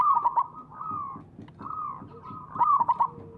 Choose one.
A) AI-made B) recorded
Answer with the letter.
B